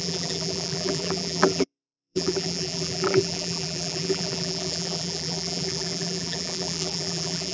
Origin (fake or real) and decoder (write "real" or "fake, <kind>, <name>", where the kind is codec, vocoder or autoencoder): fake, vocoder, BigVGAN v2